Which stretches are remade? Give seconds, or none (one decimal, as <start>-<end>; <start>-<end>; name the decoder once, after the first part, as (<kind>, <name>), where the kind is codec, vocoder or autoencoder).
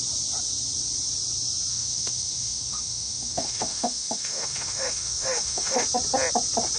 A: 1.7-5.8 (autoencoder, DAC-VAE)